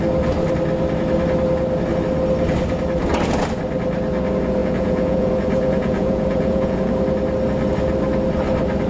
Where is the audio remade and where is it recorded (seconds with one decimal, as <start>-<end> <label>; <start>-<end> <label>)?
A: 0.0-4.6 recorded; 4.6-6.9 remade; 6.9-8.9 recorded